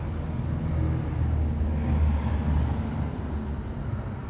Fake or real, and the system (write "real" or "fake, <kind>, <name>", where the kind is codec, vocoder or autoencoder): real